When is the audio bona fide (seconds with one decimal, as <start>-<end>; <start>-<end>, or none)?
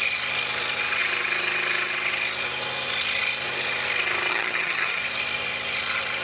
0.0-4.3; 5.0-6.2